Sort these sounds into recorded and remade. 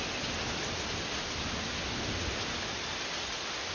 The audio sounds recorded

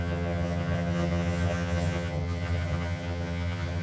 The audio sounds remade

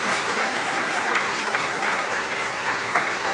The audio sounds remade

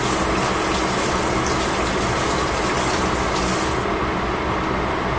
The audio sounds recorded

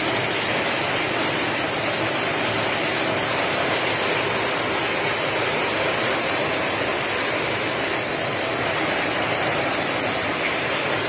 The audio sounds recorded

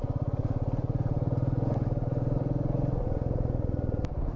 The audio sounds recorded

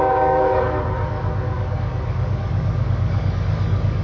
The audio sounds remade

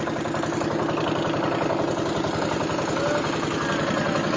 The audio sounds recorded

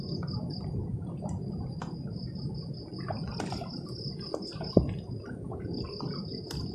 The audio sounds recorded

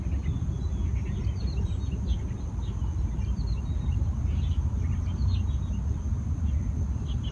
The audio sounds recorded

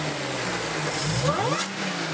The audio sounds recorded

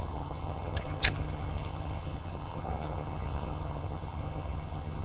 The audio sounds remade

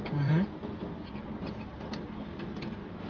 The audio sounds recorded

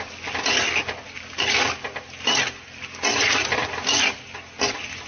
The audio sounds recorded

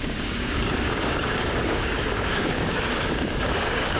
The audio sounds remade